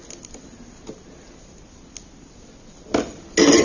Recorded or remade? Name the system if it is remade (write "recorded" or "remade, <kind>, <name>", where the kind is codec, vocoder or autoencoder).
recorded